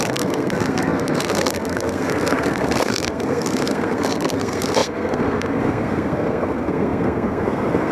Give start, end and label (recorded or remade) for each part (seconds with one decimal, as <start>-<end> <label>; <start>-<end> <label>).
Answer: 0.0-7.9 remade